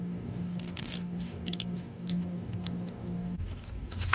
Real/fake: fake